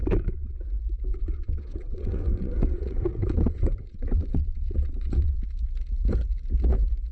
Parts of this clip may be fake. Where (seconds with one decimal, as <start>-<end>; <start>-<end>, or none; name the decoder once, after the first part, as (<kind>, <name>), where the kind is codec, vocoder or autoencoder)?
0.0-0.6 (vocoder, WaveNeXt); 1.1-5.4